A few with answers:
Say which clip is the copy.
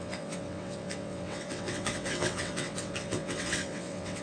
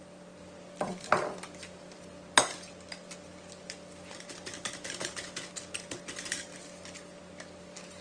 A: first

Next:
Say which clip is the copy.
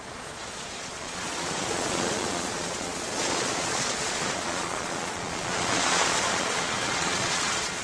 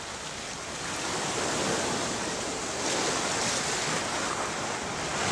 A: first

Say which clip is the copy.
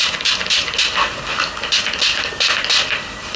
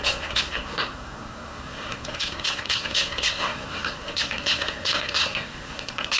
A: second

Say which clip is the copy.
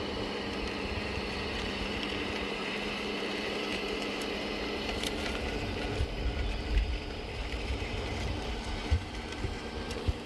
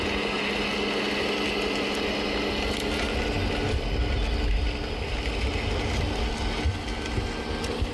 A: first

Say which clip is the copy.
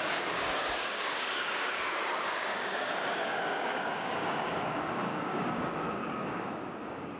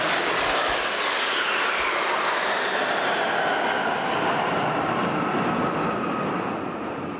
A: first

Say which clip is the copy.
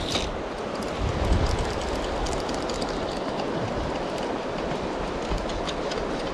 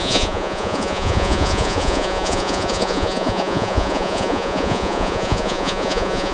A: second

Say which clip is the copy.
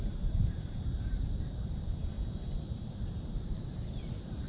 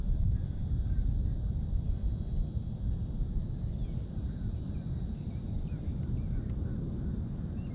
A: first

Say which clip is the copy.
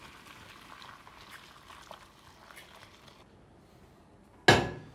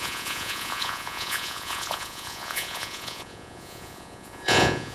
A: second